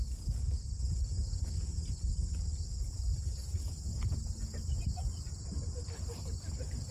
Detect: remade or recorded recorded